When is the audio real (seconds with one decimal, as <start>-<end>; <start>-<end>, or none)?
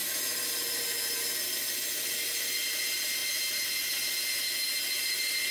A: 0.0-5.5